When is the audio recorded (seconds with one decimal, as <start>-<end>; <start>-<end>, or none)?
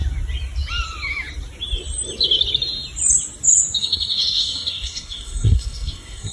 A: 0.0-3.8